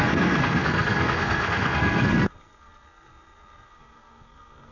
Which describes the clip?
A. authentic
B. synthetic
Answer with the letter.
B